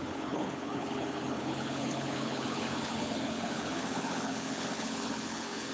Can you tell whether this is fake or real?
fake